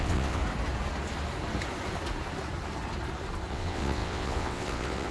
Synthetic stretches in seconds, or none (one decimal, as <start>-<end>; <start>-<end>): 0.0-0.4; 3.5-5.1